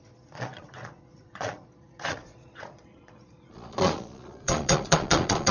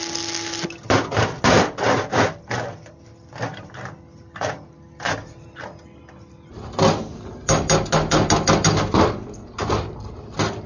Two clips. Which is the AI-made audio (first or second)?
first